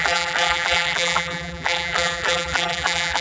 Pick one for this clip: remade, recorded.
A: remade